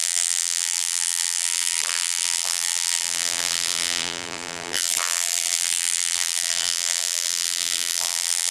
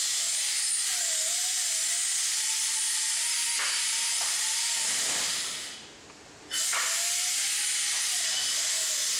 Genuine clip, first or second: second